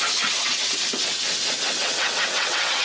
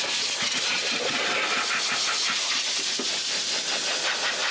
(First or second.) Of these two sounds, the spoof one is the first